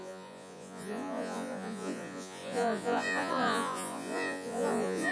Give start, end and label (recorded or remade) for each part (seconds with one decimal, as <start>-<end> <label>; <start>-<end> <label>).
0.0-5.1 remade